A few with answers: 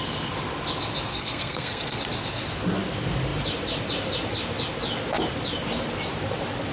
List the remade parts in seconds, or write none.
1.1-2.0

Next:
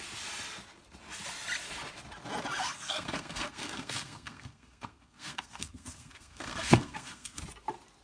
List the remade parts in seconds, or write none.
2.6-7.4

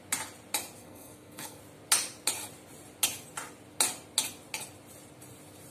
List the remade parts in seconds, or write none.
0.8-1.6

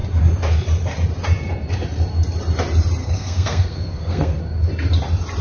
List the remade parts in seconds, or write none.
3.0-4.4